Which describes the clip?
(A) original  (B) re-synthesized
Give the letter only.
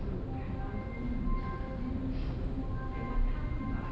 A